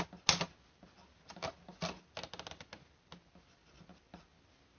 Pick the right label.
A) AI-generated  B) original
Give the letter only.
B